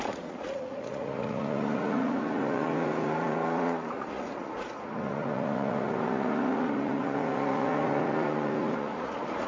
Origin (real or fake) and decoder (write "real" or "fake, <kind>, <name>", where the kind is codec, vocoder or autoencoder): fake, vocoder, Vocos